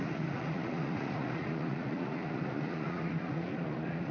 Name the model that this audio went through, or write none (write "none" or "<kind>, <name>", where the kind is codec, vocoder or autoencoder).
vocoder, Vocos